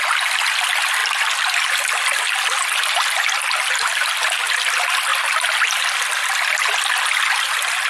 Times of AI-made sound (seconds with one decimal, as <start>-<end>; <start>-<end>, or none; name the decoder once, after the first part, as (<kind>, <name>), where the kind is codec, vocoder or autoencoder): none